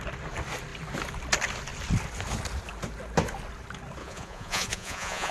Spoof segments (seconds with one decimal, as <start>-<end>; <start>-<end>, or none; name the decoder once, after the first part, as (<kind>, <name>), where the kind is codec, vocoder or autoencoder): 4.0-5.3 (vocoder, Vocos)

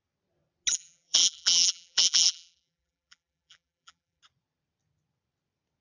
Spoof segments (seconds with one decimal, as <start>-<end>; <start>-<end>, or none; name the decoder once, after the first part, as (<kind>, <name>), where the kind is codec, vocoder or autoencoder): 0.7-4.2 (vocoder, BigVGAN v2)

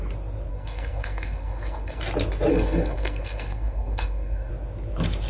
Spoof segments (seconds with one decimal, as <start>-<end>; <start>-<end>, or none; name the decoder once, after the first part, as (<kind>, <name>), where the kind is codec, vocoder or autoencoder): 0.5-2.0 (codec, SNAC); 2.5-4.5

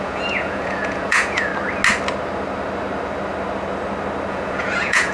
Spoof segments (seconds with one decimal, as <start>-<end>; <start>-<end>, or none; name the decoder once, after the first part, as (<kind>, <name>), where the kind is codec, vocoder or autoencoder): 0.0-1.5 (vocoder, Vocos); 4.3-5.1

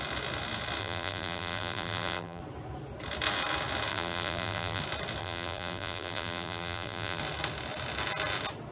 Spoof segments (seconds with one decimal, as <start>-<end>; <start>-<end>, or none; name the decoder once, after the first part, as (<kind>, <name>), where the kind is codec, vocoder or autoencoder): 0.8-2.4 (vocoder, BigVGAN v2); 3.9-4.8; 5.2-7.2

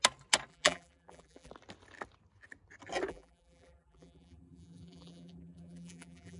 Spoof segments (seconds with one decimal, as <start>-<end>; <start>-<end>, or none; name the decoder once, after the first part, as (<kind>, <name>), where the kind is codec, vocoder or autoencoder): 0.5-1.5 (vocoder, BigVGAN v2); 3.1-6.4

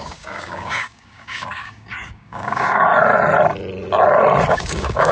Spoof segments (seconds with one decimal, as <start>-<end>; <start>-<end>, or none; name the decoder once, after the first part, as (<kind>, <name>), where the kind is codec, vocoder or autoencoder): 0.0-2.9 (codec, DAC); 4.5-5.1